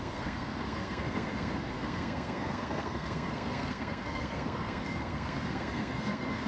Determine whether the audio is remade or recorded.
remade